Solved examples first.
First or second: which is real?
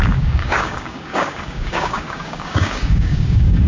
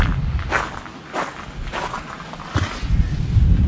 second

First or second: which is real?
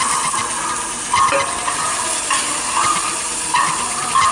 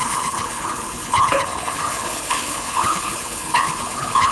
first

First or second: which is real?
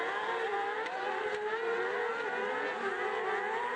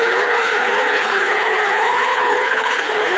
first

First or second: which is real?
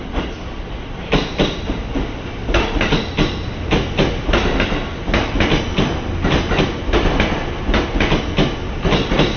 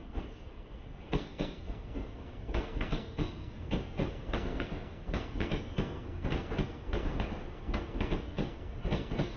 first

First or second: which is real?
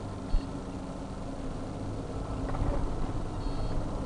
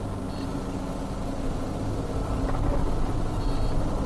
second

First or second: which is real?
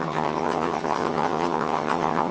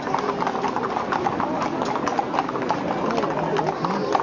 second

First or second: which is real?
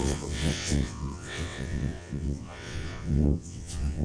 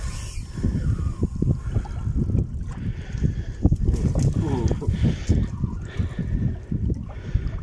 second